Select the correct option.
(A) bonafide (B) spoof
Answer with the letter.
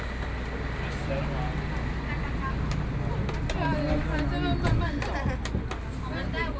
A